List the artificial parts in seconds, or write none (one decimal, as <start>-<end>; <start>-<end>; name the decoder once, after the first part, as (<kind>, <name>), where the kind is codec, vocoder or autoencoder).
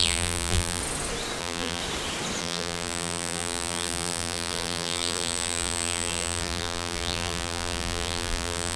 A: 0.0-0.8 (vocoder, BigVGAN v2); 1.4-1.8; 2.4-8.8